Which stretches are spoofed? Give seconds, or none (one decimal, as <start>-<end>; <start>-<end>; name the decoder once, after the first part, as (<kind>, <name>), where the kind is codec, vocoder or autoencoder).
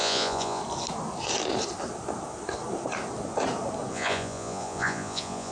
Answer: 0.0-0.6 (vocoder, Vocos); 3.9-5.5